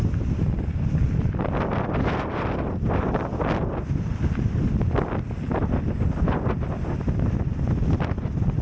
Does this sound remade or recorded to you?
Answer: recorded